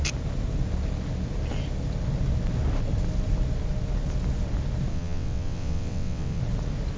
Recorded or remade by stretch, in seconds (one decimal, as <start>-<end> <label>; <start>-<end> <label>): 0.0-4.9 recorded; 4.9-6.4 remade; 6.4-7.0 recorded